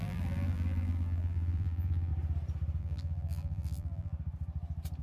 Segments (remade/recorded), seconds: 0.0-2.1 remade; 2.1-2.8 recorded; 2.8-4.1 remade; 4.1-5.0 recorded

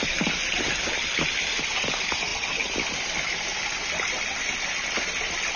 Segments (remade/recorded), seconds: 0.0-5.6 recorded

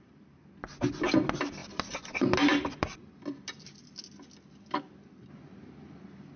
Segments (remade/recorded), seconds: 0.0-1.6 recorded; 1.6-3.7 remade; 3.7-6.4 recorded

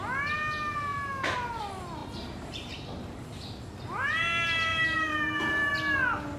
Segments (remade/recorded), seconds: 0.0-2.0 recorded; 2.0-3.2 remade; 3.2-4.7 recorded; 4.7-5.7 remade; 5.7-6.4 recorded

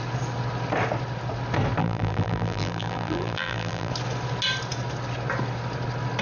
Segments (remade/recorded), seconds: 0.0-1.8 recorded; 1.8-3.9 remade; 3.9-6.2 recorded

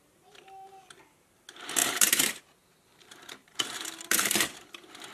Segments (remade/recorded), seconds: 0.0-1.8 recorded; 1.8-2.4 remade; 2.4-2.9 recorded; 2.9-5.1 remade

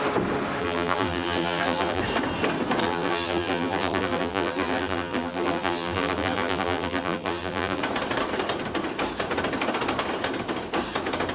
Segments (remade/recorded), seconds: 0.0-0.6 recorded; 0.6-2.0 remade; 2.0-2.8 recorded; 2.8-7.8 remade; 7.8-11.3 recorded

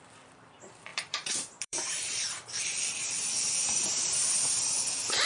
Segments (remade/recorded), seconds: 0.0-0.9 recorded; 0.9-3.9 remade; 3.9-5.3 recorded